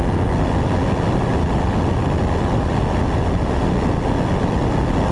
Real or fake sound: real